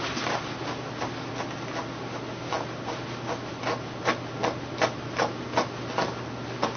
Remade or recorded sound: recorded